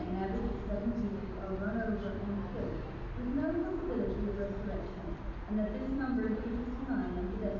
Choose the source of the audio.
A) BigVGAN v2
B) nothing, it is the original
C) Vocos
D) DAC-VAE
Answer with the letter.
B